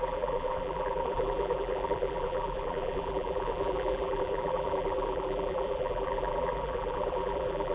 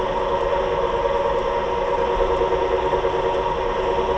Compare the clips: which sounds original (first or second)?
second